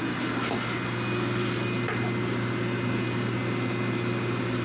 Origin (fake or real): real